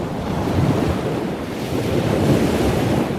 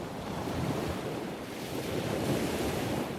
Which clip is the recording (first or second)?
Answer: first